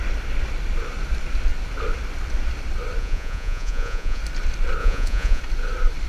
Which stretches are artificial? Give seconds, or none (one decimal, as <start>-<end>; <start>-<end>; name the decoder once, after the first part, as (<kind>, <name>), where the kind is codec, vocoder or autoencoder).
3.0-4.2 (vocoder, Vocos); 4.8-5.4